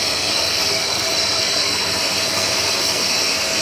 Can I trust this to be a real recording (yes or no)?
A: no